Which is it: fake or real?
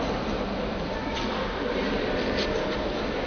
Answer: real